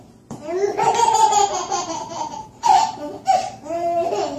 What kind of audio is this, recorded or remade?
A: remade